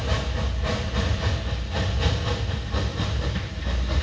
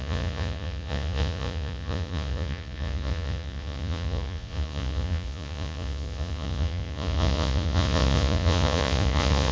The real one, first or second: first